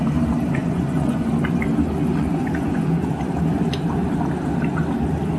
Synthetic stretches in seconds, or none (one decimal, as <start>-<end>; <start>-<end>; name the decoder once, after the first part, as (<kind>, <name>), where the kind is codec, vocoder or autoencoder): 0.6-1.3 (vocoder, Vocos); 2.2-3.1